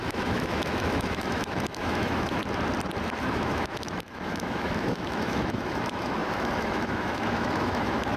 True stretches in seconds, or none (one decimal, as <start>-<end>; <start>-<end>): 2.4-3.2